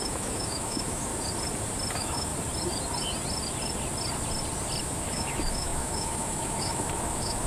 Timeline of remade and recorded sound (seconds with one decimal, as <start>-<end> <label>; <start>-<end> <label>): 0.0-1.1 remade; 1.1-1.9 recorded; 1.9-2.3 remade; 2.3-4.8 recorded; 4.8-7.5 remade